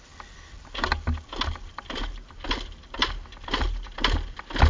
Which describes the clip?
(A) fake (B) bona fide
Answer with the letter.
B